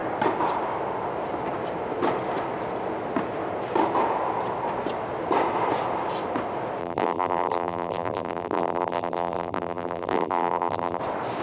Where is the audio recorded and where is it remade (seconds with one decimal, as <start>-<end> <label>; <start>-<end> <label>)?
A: 0.0-6.8 recorded; 6.8-11.0 remade; 11.0-11.4 recorded